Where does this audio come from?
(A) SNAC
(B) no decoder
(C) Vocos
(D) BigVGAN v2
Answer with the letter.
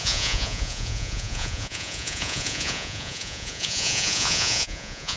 C